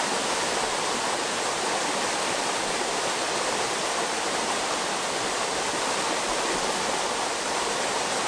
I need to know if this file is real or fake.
fake